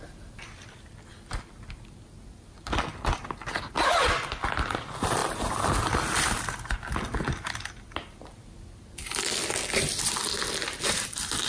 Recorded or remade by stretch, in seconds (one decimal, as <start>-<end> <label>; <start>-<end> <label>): 0.0-11.5 recorded